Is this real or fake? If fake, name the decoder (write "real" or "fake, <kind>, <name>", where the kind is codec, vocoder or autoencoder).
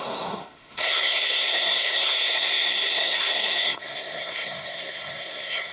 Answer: fake, codec, SNAC